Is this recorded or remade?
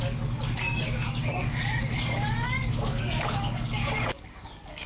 remade